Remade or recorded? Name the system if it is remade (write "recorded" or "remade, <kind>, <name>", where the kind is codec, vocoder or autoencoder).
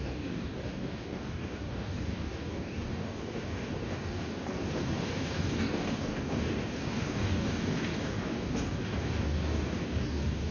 remade, codec, DAC